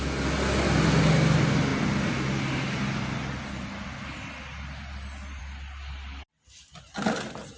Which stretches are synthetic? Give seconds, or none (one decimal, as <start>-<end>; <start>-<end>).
none